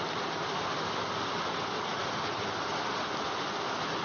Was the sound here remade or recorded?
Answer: recorded